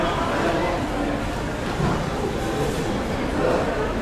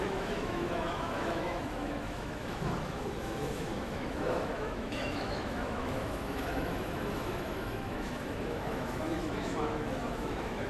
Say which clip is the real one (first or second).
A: first